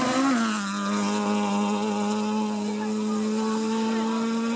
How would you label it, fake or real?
real